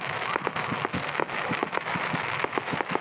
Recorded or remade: remade